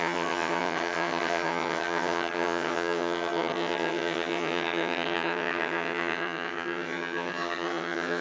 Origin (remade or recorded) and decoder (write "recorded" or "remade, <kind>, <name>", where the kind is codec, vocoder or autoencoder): remade, vocoder, HiFi-GAN